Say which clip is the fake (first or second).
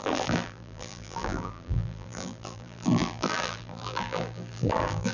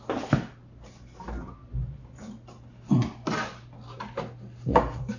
first